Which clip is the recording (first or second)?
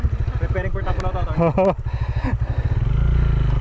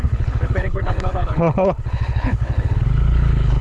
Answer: first